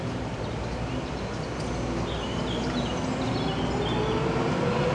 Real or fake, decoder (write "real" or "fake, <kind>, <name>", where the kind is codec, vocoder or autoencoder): real